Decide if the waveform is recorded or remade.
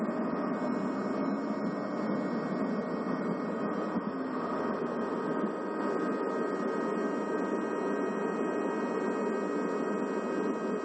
recorded